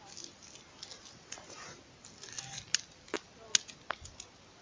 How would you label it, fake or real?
real